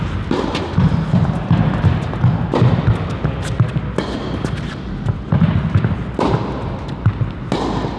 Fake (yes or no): no